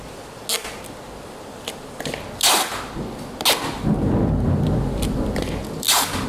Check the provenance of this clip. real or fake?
real